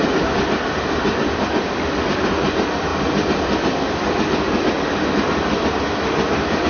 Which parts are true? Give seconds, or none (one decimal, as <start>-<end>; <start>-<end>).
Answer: 2.9-4.8